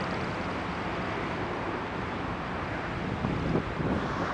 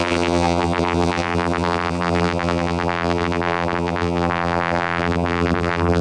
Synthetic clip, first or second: second